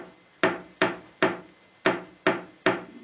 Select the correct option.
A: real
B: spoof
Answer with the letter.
A